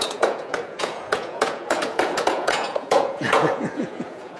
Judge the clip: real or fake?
fake